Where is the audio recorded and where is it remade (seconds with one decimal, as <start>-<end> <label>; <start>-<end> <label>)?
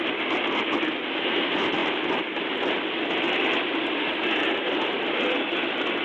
0.0-6.0 recorded